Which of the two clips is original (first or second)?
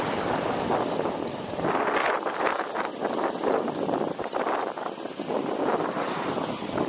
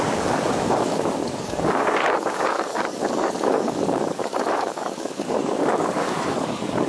first